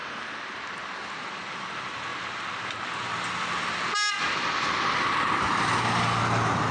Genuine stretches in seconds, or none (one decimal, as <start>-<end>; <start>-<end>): 0.0-6.7